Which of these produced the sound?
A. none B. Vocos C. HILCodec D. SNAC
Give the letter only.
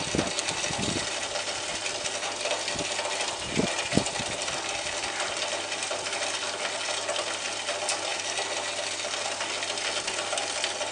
A